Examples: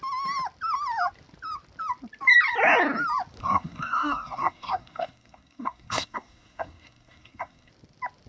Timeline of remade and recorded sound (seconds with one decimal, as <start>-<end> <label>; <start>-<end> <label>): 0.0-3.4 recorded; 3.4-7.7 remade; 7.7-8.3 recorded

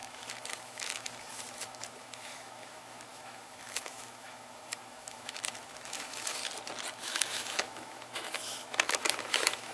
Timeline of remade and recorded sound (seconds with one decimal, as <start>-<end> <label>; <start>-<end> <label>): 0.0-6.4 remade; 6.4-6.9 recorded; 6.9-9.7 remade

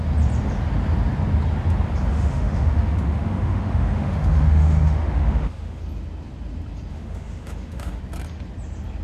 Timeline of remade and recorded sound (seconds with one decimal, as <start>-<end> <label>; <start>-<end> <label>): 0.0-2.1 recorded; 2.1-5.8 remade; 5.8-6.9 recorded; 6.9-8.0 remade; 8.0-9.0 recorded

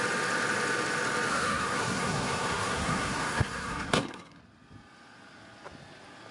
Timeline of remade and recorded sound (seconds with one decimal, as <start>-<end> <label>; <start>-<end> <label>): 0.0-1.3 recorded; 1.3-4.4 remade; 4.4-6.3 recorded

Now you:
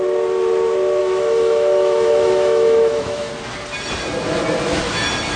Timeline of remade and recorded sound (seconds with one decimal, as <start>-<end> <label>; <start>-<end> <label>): 0.0-1.0 recorded; 1.0-3.3 remade; 3.3-5.4 recorded

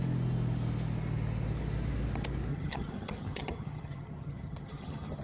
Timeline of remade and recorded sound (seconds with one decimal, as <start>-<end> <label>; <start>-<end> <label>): 0.0-2.5 recorded; 2.5-5.2 remade